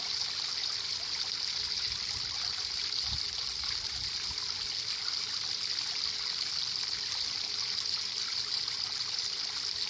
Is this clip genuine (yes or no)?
yes